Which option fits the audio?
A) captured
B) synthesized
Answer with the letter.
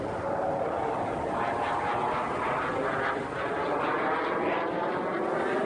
A